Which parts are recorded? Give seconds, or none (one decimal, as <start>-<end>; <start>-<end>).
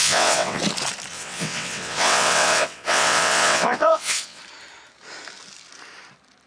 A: 0.6-1.1; 4.4-6.5